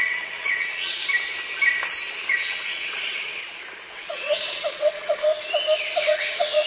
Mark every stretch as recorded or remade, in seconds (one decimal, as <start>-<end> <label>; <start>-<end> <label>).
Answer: 0.0-1.0 remade; 1.0-2.3 recorded; 2.3-3.4 remade; 3.4-3.9 recorded; 3.9-5.3 remade; 5.3-6.0 recorded; 6.0-6.7 remade